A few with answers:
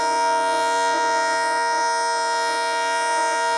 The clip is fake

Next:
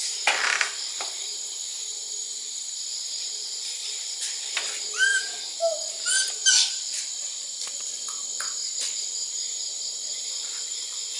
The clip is fake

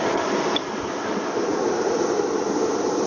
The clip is real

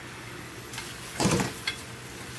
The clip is fake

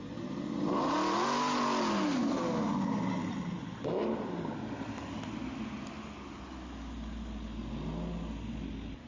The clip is real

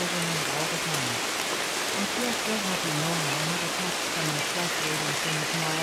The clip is real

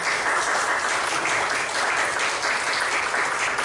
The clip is real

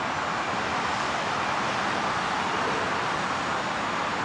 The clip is real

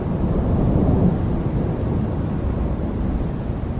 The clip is real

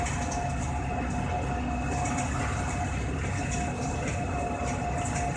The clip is real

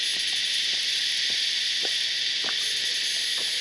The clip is real